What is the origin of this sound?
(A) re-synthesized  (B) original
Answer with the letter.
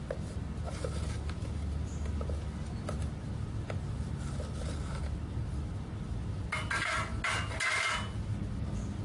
B